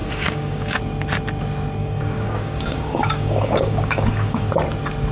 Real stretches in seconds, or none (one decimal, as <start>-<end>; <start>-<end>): 0.8-1.8; 4.5-5.1